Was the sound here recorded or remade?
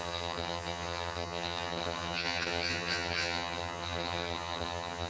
remade